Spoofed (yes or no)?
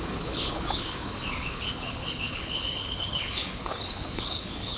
yes